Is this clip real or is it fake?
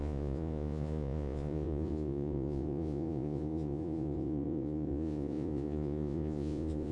fake